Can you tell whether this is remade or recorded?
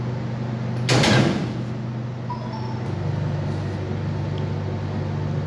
recorded